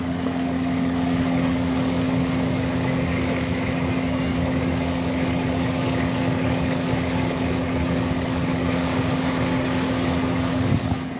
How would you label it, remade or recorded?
remade